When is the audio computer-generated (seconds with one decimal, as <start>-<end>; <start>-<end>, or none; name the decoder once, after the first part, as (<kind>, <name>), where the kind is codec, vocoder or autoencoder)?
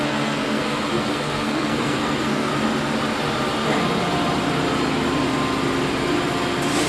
0.0-2.5 (codec, SNAC)